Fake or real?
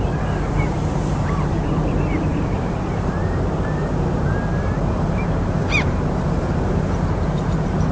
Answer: fake